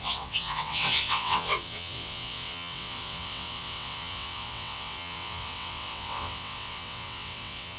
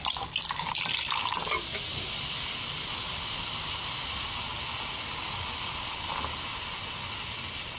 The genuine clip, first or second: second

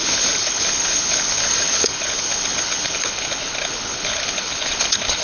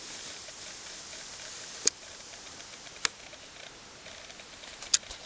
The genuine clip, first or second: second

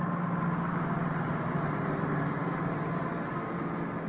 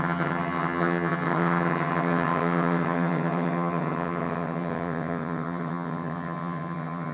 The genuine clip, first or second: first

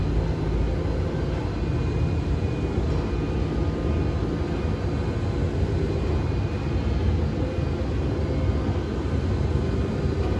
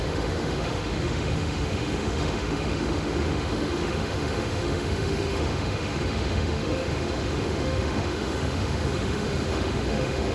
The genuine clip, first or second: first